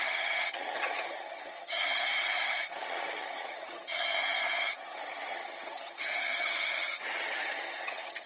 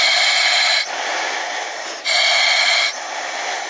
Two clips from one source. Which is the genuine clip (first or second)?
second